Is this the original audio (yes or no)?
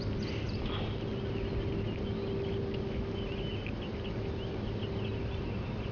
yes